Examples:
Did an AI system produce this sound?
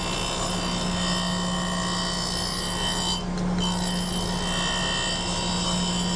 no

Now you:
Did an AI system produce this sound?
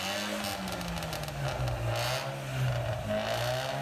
no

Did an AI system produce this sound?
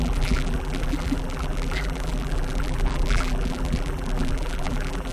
yes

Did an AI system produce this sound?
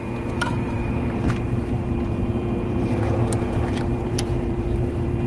yes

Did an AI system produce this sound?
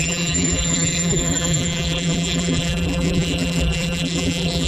yes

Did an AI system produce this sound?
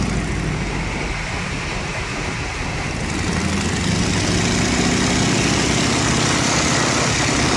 no